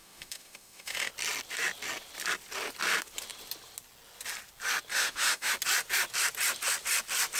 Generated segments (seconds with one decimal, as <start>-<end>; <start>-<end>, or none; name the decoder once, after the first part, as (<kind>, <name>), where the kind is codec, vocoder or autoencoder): 0.0-1.1 (autoencoder, DAC-VAE); 4.9-5.5